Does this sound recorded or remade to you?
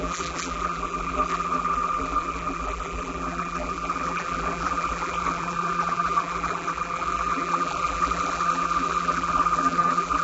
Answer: remade